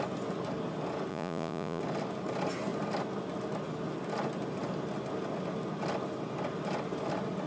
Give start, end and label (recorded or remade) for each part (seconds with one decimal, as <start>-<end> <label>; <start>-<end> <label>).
0.0-1.1 recorded; 1.1-1.8 remade; 1.8-7.5 recorded